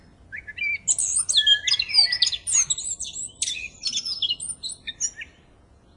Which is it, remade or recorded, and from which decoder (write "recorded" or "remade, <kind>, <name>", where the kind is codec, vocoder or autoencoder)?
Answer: recorded